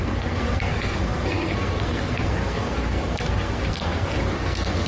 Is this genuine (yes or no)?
no